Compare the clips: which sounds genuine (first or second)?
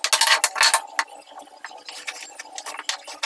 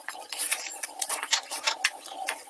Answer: first